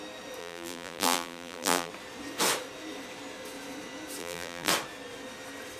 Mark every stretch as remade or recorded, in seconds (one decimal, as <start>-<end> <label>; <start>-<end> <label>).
0.0-0.4 recorded; 0.4-1.9 remade; 1.9-4.2 recorded; 4.2-4.7 remade; 4.7-5.8 recorded